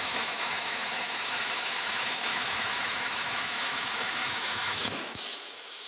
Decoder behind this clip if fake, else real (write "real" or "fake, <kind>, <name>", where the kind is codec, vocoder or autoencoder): fake, autoencoder, DAC-VAE